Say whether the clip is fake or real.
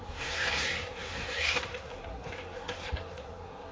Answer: fake